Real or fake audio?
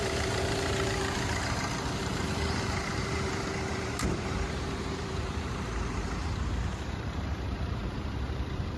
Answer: fake